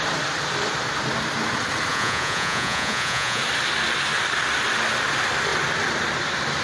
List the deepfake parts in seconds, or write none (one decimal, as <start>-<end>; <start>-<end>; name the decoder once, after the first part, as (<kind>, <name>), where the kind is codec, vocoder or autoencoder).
1.9-3.4 (vocoder, Vocos)